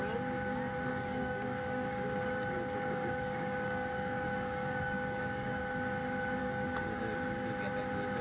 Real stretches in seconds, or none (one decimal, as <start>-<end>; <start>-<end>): 0.0-0.9; 5.6-6.4; 7.0-8.2